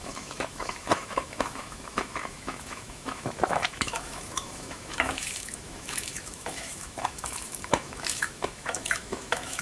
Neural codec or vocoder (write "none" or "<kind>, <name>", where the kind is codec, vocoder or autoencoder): autoencoder, DAC-VAE